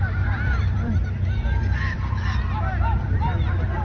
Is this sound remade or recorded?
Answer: remade